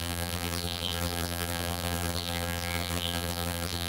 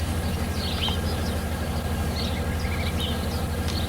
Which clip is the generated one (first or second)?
first